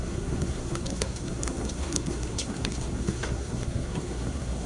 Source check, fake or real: fake